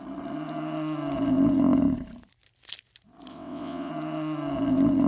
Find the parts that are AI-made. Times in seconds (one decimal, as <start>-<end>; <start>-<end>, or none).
3.3-3.9